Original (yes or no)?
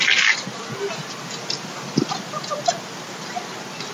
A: yes